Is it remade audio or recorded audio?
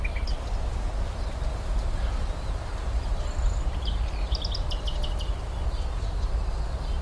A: recorded